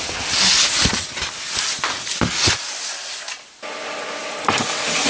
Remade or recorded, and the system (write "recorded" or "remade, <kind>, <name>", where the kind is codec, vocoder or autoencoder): recorded